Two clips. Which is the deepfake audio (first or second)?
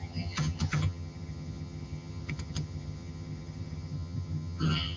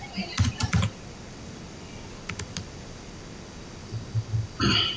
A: first